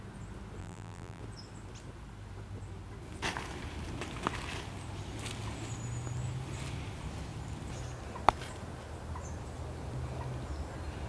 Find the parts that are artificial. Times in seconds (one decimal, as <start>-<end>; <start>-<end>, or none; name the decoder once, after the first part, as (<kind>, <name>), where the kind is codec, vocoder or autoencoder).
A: 0.6-1.2 (vocoder, BigVGAN v2)